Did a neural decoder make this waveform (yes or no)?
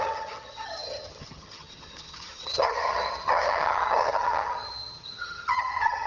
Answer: yes